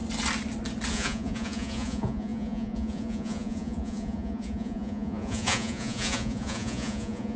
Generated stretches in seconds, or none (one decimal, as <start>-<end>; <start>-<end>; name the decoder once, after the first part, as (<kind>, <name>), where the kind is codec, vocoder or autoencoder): 0.9-7.4 (vocoder, Vocos)